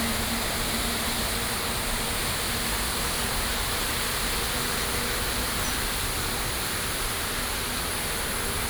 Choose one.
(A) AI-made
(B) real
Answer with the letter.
B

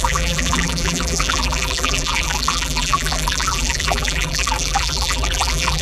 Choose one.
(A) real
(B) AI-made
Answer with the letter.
B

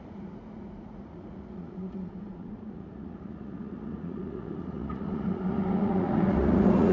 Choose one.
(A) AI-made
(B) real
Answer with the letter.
A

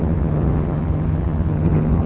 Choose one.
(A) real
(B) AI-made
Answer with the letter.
B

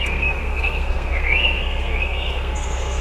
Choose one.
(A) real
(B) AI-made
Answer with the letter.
B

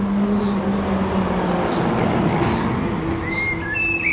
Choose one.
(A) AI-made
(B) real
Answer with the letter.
B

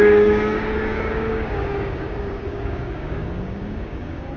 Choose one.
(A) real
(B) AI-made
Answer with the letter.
B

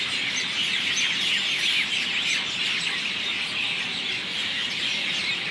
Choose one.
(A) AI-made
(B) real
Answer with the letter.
B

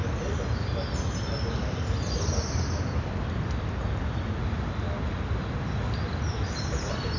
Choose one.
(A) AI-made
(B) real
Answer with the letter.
B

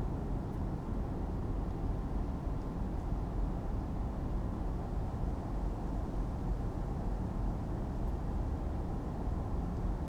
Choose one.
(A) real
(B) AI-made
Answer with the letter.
A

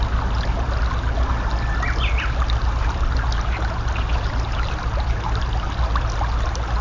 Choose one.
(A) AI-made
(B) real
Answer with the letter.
B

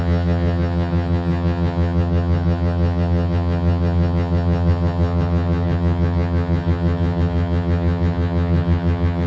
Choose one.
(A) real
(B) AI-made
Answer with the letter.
B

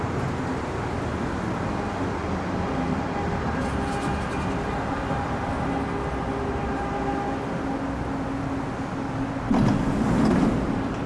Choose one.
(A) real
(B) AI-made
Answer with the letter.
A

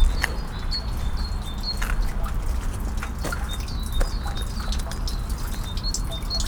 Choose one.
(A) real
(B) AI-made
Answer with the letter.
A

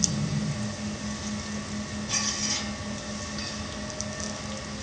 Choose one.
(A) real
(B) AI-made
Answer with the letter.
A